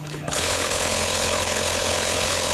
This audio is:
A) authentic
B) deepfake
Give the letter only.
B